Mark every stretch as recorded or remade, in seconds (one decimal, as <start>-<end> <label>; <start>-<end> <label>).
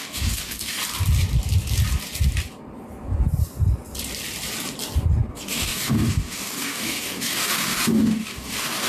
0.0-0.8 remade; 0.8-5.3 recorded; 5.3-8.9 remade